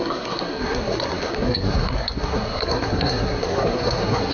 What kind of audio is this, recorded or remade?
remade